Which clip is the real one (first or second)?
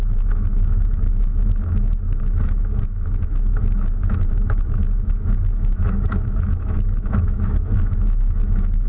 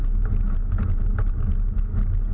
second